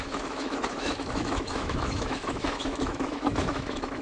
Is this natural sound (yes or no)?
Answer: no